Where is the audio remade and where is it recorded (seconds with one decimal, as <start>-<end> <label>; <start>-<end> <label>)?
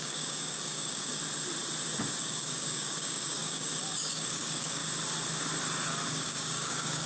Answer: 0.0-1.2 remade; 1.2-2.2 recorded; 2.2-4.8 remade; 4.8-6.1 recorded; 6.1-7.1 remade